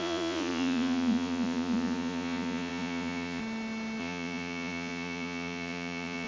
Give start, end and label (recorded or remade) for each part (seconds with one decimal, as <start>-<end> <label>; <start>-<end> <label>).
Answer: 0.0-3.4 remade; 3.4-4.0 recorded; 4.0-6.3 remade